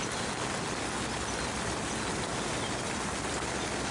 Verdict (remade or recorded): recorded